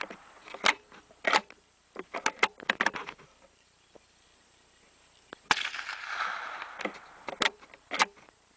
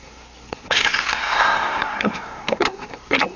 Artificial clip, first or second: second